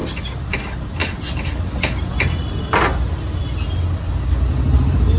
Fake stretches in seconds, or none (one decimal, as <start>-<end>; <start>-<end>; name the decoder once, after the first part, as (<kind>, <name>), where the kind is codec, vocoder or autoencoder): none